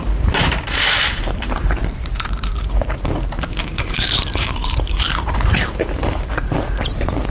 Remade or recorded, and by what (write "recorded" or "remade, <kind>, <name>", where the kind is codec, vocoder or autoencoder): remade, vocoder, BigVGAN v2